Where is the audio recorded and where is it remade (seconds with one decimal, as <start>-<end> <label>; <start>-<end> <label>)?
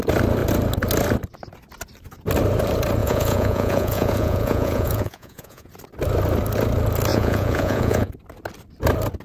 0.0-3.0 recorded; 3.0-5.7 remade; 5.7-7.1 recorded; 7.1-8.1 remade; 8.1-9.2 recorded